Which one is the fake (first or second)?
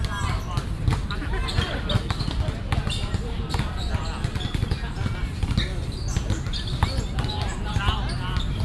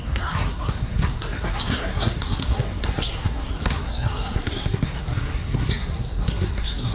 second